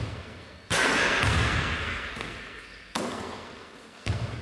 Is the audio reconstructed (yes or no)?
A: yes